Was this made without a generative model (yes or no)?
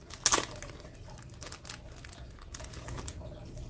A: yes